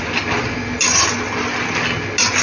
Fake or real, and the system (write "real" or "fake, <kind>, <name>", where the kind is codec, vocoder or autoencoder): real